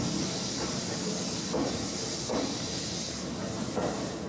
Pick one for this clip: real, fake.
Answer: real